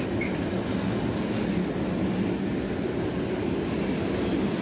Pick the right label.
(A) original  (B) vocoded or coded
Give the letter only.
A